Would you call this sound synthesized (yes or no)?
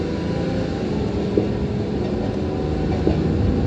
no